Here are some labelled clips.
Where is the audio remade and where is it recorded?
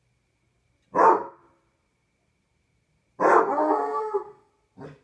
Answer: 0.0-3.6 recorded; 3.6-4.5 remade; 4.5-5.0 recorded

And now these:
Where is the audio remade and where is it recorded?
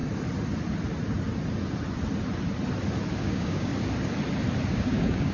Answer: 0.0-3.2 recorded; 3.2-3.7 remade; 3.7-4.7 recorded; 4.7-5.3 remade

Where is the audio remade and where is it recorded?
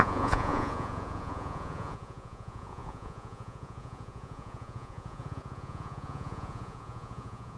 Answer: 0.0-7.6 remade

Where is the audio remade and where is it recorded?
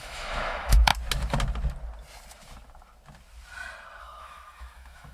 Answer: 0.0-0.9 remade; 0.9-4.0 recorded; 4.0-5.1 remade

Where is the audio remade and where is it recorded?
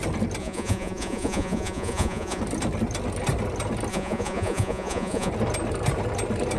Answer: 0.0-0.4 recorded; 0.4-2.4 remade; 2.4-3.9 recorded; 3.9-5.3 remade; 5.3-6.6 recorded